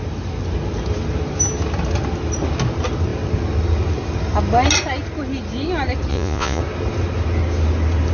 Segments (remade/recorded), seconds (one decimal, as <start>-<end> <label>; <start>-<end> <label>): 0.0-6.1 recorded; 6.1-6.6 remade; 6.6-8.1 recorded